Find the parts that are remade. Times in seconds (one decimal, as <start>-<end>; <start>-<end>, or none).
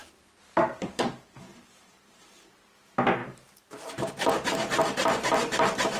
0.0-2.8; 3.2-4.1; 5.0-6.0